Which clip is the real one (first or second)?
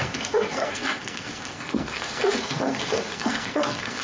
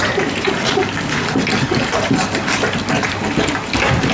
second